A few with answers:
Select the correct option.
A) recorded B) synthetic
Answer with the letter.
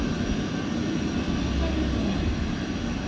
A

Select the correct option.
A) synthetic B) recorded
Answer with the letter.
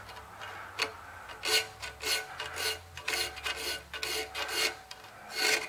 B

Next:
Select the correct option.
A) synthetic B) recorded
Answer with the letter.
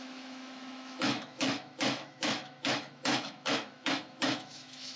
A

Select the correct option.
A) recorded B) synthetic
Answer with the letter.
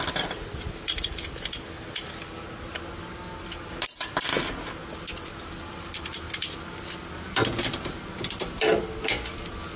A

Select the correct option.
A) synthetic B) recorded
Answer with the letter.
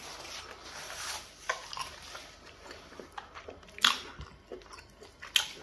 B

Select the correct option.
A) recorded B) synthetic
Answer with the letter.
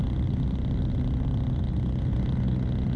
A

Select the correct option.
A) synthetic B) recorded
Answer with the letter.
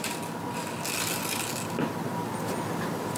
B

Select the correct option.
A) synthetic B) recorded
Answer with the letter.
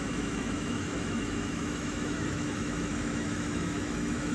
A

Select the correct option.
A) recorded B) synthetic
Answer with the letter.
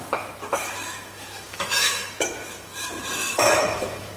B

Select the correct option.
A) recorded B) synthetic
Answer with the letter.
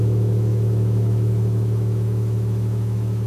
B